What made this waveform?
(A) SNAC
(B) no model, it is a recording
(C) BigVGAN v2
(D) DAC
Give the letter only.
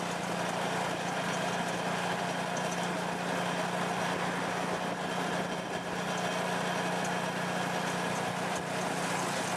B